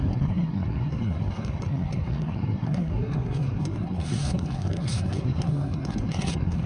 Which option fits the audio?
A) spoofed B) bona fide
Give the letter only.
A